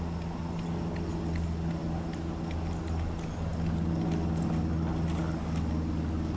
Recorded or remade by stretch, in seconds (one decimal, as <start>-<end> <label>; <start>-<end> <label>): 0.0-6.4 recorded